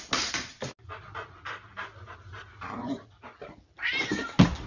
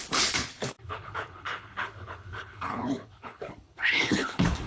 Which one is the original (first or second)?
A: first